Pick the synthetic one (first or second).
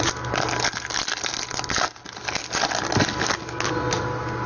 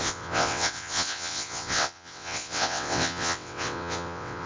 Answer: second